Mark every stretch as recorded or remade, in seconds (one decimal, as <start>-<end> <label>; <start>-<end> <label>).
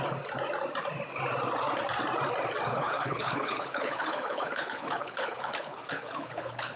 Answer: 0.0-2.7 recorded; 2.7-6.8 remade